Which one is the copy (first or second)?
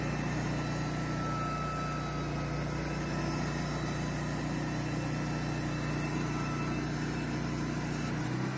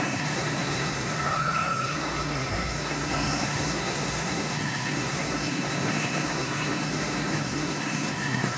second